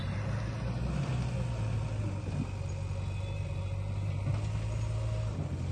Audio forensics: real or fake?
real